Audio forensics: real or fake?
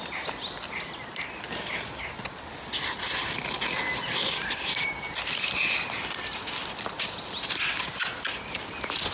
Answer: real